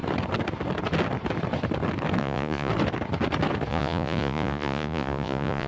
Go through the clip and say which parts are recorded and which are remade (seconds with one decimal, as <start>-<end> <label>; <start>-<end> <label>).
0.0-2.2 recorded; 2.2-2.7 remade; 2.7-3.7 recorded; 3.7-5.7 remade